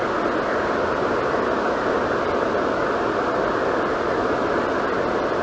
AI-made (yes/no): no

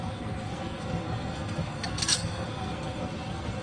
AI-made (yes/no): yes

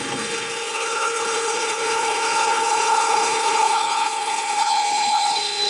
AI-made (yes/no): yes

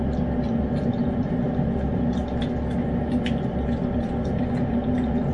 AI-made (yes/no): no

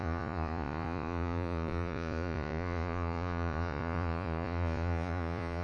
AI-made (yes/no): yes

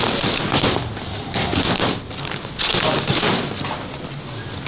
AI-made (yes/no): no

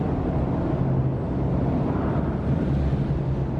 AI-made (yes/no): no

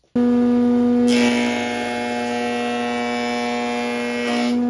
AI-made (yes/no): no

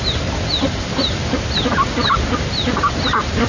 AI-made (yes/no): no